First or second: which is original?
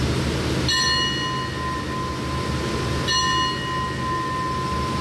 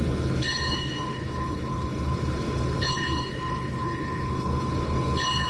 first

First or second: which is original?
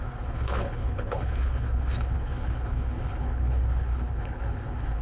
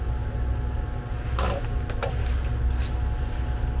second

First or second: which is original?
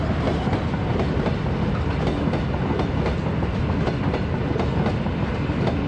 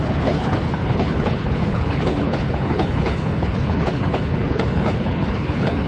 first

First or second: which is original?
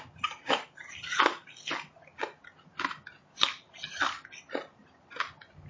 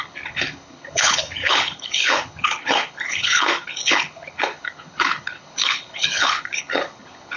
first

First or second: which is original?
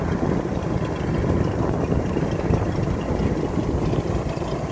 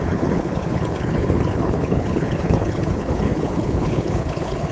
first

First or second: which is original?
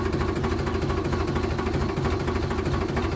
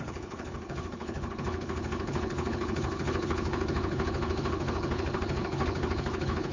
first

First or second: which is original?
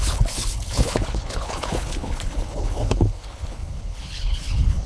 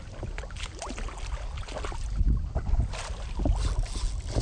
second